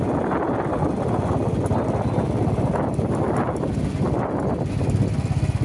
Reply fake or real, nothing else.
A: real